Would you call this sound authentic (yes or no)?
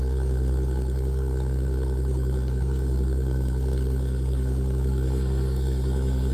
no